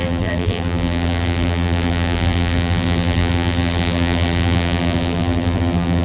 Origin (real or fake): fake